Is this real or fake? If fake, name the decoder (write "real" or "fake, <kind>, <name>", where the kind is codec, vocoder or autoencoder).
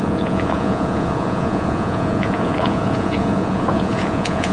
fake, vocoder, Vocos